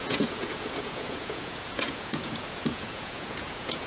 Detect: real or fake fake